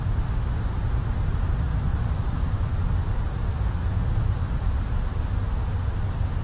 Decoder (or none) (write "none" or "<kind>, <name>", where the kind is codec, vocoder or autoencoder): none